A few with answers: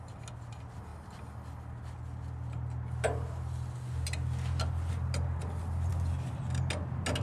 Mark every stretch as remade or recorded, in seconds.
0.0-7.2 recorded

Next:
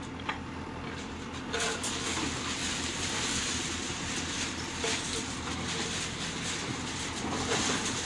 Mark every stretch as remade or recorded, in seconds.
0.0-2.6 recorded; 2.6-4.1 remade; 4.1-8.1 recorded